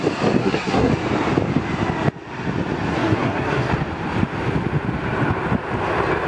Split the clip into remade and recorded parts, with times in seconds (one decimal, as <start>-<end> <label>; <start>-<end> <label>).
0.0-0.4 recorded; 0.4-0.9 remade; 0.9-2.9 recorded; 2.9-3.7 remade; 3.7-6.3 recorded